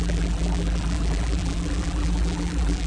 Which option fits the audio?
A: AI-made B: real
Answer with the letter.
A